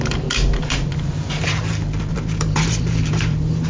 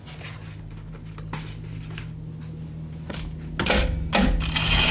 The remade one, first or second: first